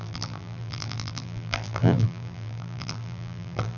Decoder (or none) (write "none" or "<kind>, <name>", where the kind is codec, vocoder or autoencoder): vocoder, BigVGAN v2